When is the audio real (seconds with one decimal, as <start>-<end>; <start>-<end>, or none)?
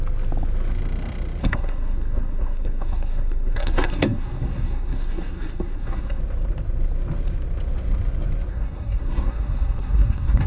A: 0.0-1.4; 6.2-8.5